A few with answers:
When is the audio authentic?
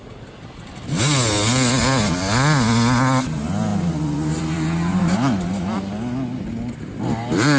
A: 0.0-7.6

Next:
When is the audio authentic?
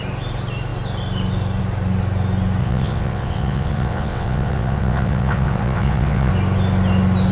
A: 0.0-2.6; 6.3-7.3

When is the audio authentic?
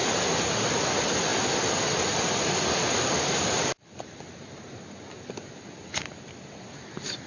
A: 0.0-7.3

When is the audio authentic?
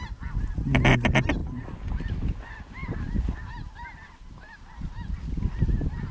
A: 0.0-6.1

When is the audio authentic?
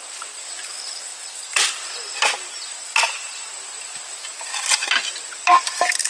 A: 0.0-6.1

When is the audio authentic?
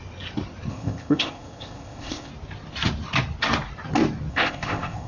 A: 0.0-0.7; 2.3-4.3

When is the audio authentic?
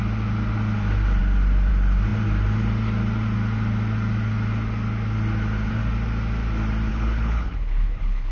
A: 0.0-6.9